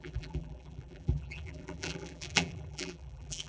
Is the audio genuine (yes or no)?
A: no